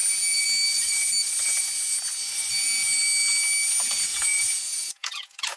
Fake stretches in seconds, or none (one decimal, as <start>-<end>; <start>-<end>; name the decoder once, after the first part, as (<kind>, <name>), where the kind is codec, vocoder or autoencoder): 4.1-5.6 (vocoder, Vocos)